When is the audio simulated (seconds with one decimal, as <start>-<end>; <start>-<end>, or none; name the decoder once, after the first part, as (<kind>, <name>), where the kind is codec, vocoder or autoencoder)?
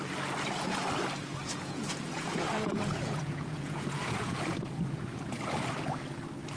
1.4-5.4 (vocoder, Vocos)